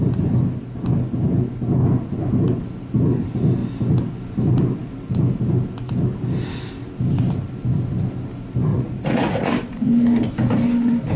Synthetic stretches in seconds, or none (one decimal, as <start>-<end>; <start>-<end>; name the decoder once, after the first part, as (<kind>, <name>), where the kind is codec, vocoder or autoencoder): 8.7-9.5 (vocoder, Vocos)